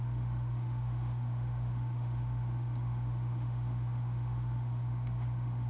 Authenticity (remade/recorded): remade